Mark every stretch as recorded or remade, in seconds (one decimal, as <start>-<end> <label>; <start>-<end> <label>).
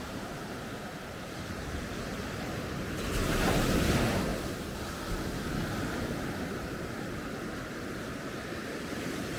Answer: 0.0-4.3 remade; 4.3-9.4 recorded